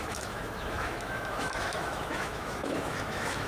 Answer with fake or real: fake